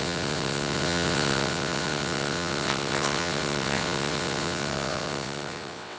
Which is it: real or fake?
fake